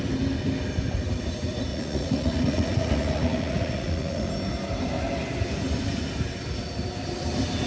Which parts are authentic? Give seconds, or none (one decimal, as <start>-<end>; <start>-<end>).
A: 0.0-1.7; 4.3-7.7